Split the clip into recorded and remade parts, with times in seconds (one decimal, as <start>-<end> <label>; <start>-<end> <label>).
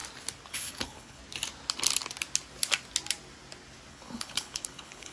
0.0-0.5 recorded; 0.5-1.2 remade; 1.2-3.9 recorded; 3.9-5.1 remade